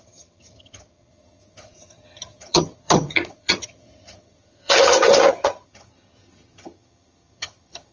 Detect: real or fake fake